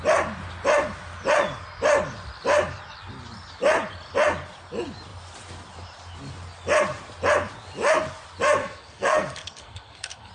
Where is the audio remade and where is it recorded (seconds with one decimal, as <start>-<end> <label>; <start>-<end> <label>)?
0.0-8.6 recorded; 8.6-10.3 remade